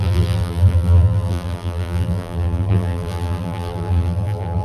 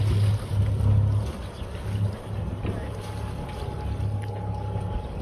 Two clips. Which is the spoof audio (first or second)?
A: first